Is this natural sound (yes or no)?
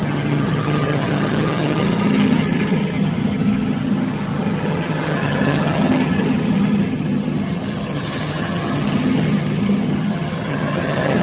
no